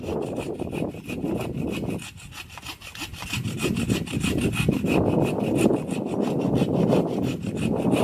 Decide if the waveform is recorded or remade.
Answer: recorded